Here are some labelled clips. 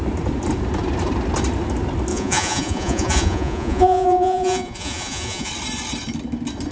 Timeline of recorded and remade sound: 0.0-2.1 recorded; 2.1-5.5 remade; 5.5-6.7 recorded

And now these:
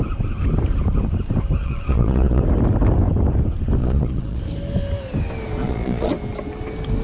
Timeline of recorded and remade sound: 0.0-1.6 recorded; 1.6-2.4 remade; 2.4-3.8 recorded; 3.8-4.4 remade; 4.4-5.6 recorded; 5.6-6.1 remade; 6.1-7.0 recorded

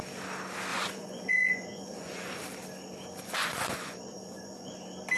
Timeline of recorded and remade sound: 0.0-0.7 recorded; 0.7-2.4 remade; 2.4-3.4 recorded; 3.4-4.7 remade; 4.7-5.2 recorded

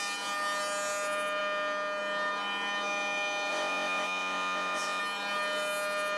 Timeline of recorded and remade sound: 0.0-3.5 recorded; 3.5-5.0 remade; 5.0-6.2 recorded

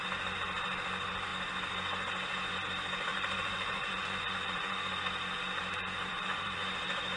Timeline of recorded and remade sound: 0.0-3.1 recorded; 3.1-4.9 remade; 4.9-6.1 recorded; 6.1-6.7 remade; 6.7-7.2 recorded

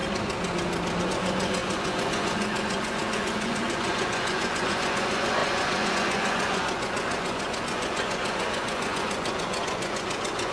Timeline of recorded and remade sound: 0.0-1.0 recorded; 1.0-10.5 remade